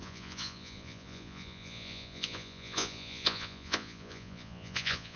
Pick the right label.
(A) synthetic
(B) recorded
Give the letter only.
A